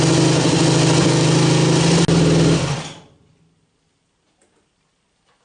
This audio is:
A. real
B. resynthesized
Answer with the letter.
A